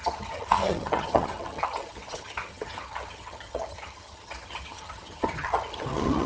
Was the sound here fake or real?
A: fake